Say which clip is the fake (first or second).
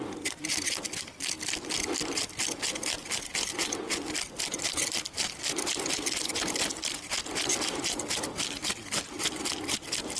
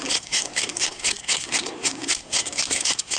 second